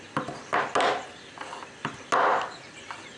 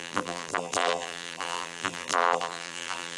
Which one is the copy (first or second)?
second